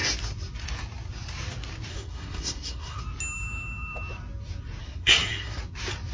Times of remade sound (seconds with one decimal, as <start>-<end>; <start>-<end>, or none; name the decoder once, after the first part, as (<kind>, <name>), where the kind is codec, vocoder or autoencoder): 1.9-3.0 (codec, SNAC); 4.8-5.6